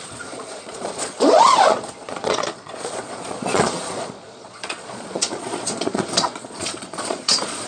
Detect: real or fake fake